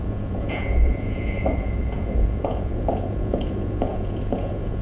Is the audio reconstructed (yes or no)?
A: yes